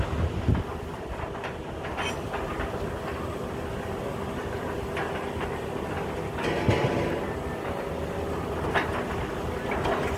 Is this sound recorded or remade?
recorded